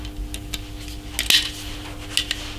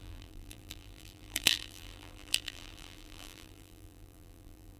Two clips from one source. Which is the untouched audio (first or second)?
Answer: first